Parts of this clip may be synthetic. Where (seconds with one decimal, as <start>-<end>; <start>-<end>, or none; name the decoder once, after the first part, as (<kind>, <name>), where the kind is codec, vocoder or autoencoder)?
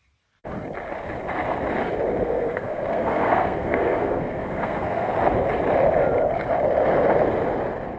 2.2-5.1 (codec, SNAC)